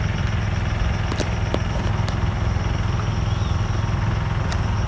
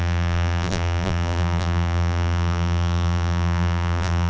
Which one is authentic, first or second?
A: first